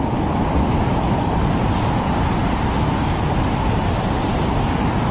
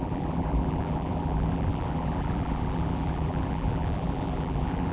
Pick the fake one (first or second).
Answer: second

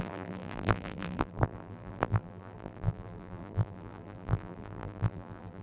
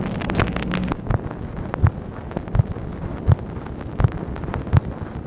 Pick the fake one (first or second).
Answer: first